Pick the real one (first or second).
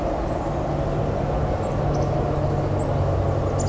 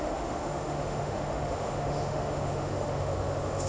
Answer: first